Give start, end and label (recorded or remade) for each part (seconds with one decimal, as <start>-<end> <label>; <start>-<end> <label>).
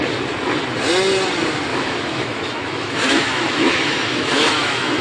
0.0-1.7 recorded; 1.7-5.0 remade